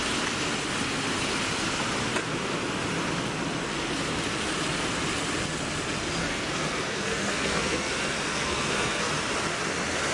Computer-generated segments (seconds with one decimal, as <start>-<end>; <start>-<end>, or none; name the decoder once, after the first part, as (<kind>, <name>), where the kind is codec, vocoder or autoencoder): 6.2-7.9 (codec, SNAC); 8.3-9.1

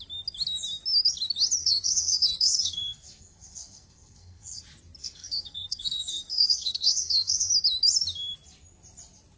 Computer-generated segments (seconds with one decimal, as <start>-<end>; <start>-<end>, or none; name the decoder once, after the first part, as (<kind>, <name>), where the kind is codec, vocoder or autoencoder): 1.6-4.6 (codec, SNAC); 5.0-7.5

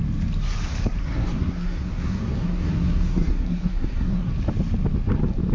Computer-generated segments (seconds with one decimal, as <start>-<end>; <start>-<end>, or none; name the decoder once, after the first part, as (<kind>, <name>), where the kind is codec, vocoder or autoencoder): 1.0-4.3 (codec, SNAC)

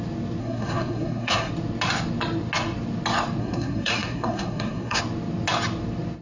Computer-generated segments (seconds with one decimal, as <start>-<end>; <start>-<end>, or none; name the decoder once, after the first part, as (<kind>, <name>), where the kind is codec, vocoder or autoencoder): 0.4-1.5 (codec, SNAC); 3.4-5.0

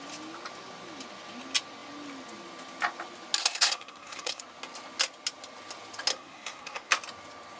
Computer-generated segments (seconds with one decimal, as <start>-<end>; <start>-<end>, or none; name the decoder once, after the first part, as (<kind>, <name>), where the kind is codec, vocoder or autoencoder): 3.4-4.4 (codec, SNAC); 6.1-6.9

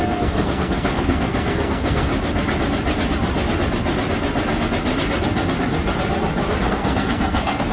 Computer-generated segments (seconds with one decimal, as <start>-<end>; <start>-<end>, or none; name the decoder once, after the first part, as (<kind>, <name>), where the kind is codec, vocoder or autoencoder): 0.0-2.1 (codec, SNAC); 6.7-7.7